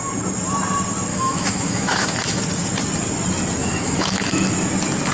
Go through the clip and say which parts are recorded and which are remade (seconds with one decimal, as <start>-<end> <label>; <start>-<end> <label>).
0.0-1.1 recorded; 1.1-2.4 remade; 2.4-3.6 recorded; 3.6-4.5 remade; 4.5-5.1 recorded